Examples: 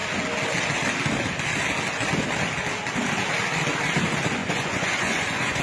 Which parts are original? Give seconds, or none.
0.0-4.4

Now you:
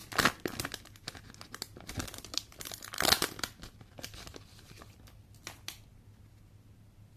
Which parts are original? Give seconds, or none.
0.0-7.2

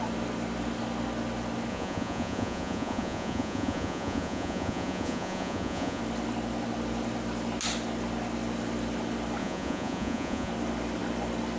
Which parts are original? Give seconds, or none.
0.0-1.7; 6.0-9.4; 10.5-11.6

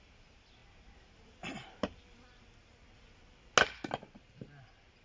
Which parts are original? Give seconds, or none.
0.0-5.0

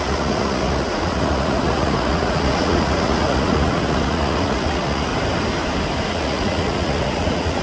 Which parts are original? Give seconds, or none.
5.1-6.1